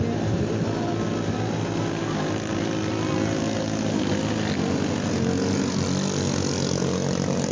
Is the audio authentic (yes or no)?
yes